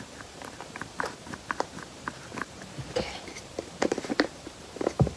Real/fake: fake